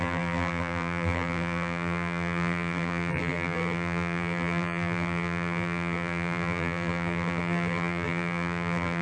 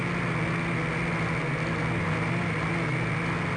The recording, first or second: second